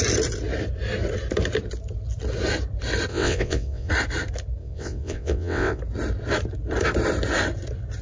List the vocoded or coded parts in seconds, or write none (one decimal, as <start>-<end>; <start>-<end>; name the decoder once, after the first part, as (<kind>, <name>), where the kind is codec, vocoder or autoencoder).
3.1-3.9 (vocoder, WaveNeXt); 4.6-5.8